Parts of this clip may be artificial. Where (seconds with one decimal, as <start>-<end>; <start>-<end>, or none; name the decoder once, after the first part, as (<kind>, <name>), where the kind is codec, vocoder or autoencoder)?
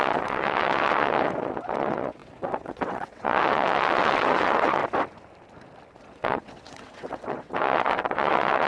0.0-4.8 (vocoder, WaveNeXt); 6.0-8.7